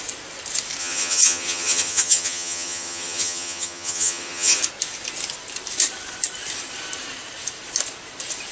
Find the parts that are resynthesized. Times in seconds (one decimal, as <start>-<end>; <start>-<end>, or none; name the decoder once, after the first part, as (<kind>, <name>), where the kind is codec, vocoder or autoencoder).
0.8-4.6 (vocoder, HiFi-GAN)